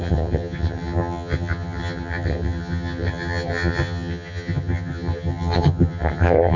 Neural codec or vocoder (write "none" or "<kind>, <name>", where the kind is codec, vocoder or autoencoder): vocoder, HiFi-GAN